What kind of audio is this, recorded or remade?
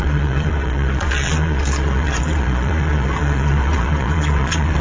remade